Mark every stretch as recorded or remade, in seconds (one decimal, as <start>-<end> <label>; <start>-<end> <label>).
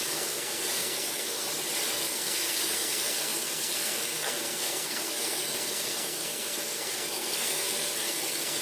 0.0-1.4 remade; 1.4-1.9 recorded; 1.9-8.6 remade